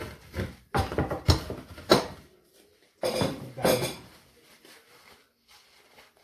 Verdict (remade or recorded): remade